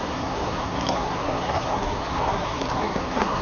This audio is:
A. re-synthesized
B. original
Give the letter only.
A